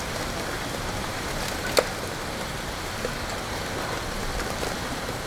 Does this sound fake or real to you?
real